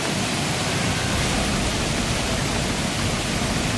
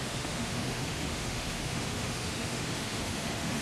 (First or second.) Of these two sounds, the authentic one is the first